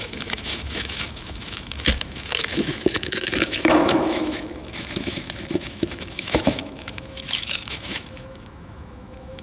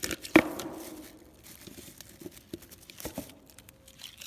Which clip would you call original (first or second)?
second